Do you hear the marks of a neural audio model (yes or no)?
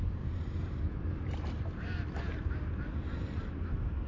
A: yes